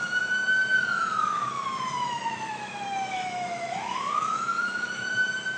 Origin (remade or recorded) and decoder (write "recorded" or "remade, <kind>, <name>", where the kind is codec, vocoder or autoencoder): remade, autoencoder, DAC-VAE